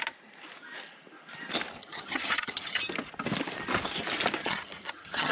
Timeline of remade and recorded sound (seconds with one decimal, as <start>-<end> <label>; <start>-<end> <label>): 0.0-1.8 recorded; 1.8-2.8 remade; 2.8-4.4 recorded; 4.4-5.3 remade